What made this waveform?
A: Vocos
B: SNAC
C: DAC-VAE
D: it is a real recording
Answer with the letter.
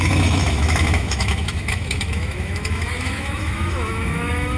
C